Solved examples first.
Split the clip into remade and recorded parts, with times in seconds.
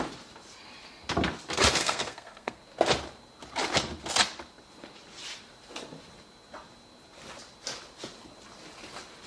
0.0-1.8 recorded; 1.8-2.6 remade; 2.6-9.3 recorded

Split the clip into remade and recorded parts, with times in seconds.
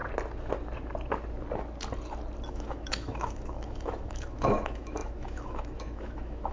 0.0-2.5 recorded; 2.5-6.5 remade